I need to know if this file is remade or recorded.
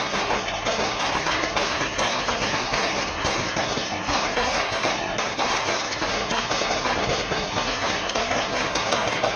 remade